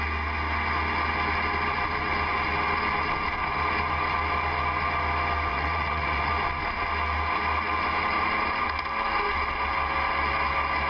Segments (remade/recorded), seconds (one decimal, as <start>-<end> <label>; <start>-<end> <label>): 0.0-5.5 recorded; 5.5-6.3 remade; 6.3-10.9 recorded